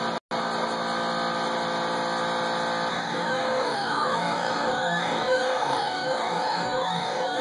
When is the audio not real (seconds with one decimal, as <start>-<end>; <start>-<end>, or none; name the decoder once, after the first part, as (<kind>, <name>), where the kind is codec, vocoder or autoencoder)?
2.9-7.4 (codec, DAC)